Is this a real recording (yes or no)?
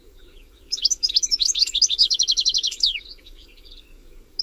no